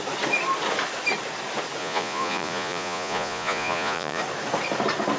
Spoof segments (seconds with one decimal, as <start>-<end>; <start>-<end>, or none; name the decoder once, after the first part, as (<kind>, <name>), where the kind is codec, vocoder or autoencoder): 1.8-4.2 (vocoder, Vocos)